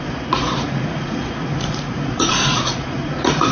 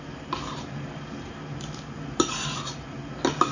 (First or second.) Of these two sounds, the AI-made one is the first